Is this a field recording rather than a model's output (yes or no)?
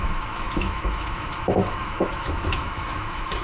no